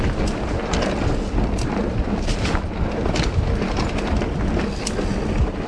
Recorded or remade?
recorded